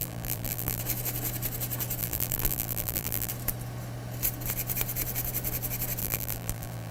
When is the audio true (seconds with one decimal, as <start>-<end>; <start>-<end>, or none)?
0.8-2.0; 3.3-6.0